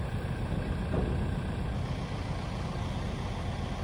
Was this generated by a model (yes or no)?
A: no